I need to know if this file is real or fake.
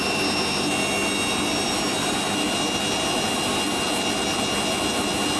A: real